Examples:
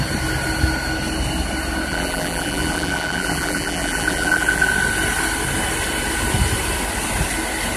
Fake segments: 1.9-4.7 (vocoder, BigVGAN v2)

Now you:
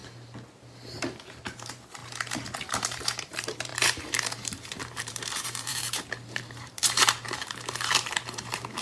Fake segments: 1.0-2.0 (vocoder, BigVGAN v2); 2.8-8.8

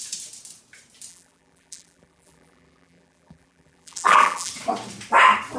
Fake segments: 1.1-4.5 (vocoder, BigVGAN v2)

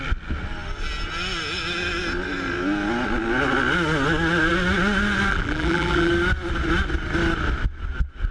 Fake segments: 5.3-6.1 (vocoder, BigVGAN v2)

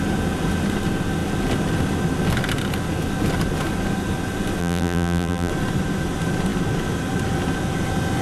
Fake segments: 4.6-5.5 (vocoder, BigVGAN v2)

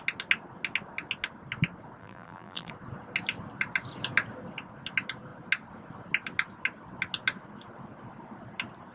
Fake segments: 2.0-2.7 (vocoder, BigVGAN v2)

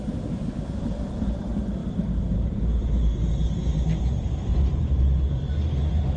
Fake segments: 1.8-5.0 (vocoder, BigVGAN v2)

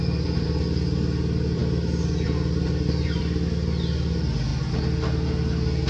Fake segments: none